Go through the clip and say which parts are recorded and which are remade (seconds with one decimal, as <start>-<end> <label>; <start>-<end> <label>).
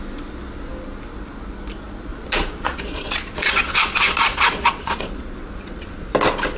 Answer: 0.0-2.1 recorded; 2.1-6.1 remade; 6.1-6.6 recorded